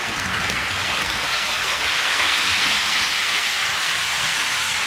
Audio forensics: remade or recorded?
remade